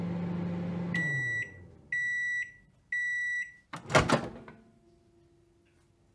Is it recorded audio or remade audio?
recorded